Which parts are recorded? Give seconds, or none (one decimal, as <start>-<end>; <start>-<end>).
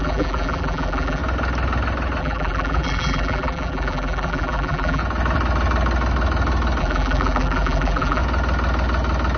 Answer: 1.2-2.2; 5.0-6.8; 8.2-9.4